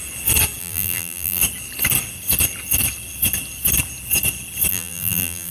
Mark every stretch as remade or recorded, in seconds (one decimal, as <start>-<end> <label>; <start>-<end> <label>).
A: 0.0-0.6 recorded; 0.6-1.4 remade; 1.4-4.7 recorded; 4.7-5.5 remade